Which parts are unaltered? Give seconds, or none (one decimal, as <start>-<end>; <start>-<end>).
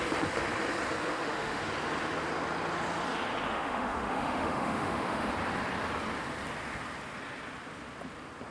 0.0-1.0; 1.6-3.5; 5.3-8.5